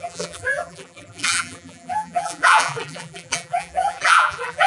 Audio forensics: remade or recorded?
remade